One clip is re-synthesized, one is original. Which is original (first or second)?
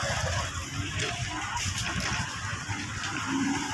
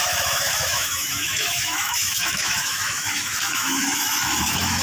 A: first